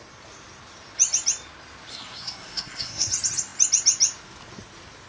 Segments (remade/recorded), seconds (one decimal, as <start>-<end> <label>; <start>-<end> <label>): 0.0-1.9 recorded; 1.9-3.1 remade; 3.1-5.1 recorded